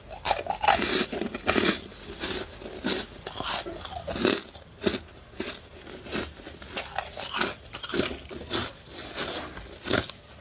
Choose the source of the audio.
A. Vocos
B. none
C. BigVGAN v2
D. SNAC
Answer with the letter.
B